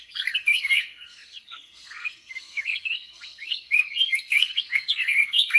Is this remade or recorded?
remade